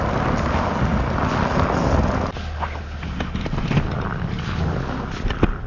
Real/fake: real